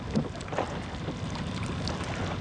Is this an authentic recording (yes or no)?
yes